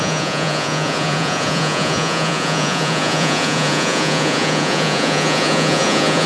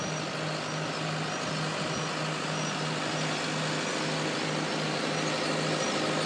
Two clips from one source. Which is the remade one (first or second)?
first